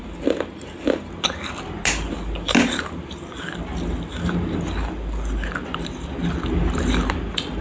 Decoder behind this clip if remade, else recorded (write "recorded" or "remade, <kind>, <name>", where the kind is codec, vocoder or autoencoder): recorded